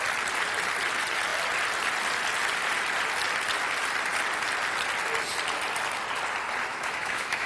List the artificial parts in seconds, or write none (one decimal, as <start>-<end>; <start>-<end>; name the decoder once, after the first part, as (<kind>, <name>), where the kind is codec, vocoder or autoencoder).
6.7-7.5 (autoencoder, DAC-VAE)